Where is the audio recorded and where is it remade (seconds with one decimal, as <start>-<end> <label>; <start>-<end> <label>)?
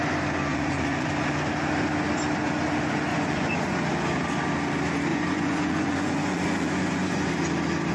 0.0-0.5 recorded; 0.5-1.1 remade; 1.1-3.1 recorded; 3.1-3.8 remade; 3.8-5.1 recorded; 5.1-7.3 remade; 7.3-7.9 recorded